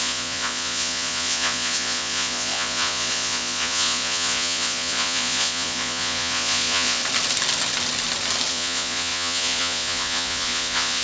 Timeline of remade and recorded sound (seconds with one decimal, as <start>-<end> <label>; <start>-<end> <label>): 0.0-7.0 remade; 7.0-8.5 recorded; 8.5-11.0 remade